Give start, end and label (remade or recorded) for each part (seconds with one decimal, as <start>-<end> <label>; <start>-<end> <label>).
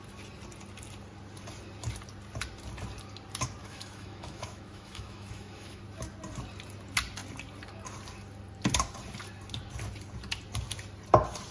0.0-3.6 recorded; 3.6-5.8 remade; 5.8-11.5 recorded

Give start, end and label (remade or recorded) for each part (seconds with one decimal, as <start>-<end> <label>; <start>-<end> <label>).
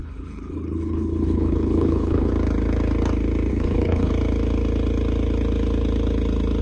0.0-2.3 remade; 2.3-3.5 recorded; 3.5-4.1 remade; 4.1-6.6 recorded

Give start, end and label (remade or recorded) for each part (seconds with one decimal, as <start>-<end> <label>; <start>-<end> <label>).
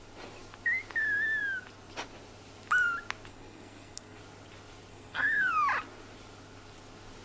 0.0-3.3 recorded; 3.3-4.2 remade; 4.2-4.9 recorded; 4.9-5.5 remade; 5.5-7.2 recorded